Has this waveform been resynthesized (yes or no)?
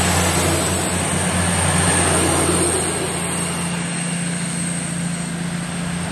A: no